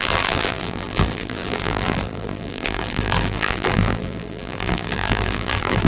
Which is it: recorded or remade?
remade